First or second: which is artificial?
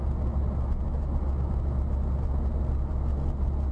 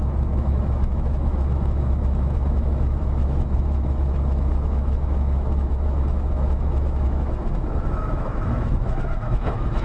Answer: second